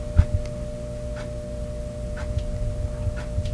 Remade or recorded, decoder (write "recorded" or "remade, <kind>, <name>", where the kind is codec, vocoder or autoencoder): recorded